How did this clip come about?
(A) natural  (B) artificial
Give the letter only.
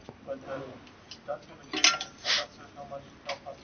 A